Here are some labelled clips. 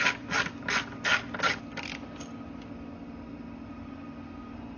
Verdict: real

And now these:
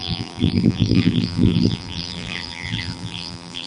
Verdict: fake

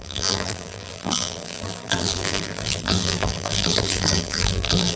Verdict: fake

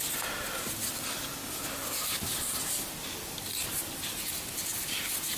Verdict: real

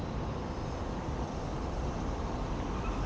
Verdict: fake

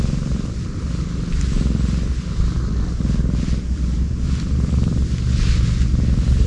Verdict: real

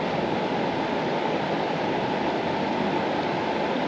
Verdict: real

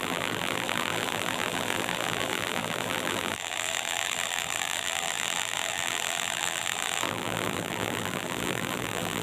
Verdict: fake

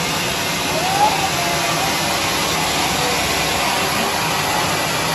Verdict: real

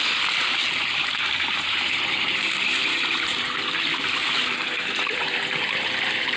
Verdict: fake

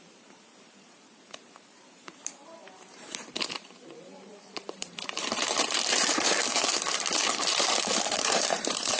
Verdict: fake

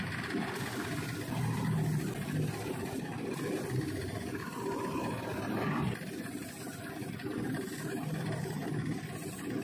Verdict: real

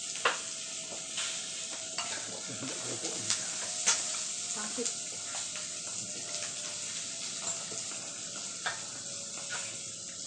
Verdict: real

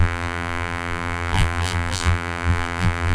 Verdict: fake